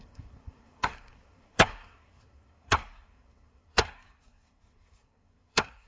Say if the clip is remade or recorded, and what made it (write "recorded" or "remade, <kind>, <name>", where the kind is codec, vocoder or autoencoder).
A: remade, codec, SNAC